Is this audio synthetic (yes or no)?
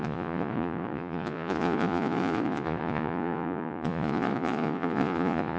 yes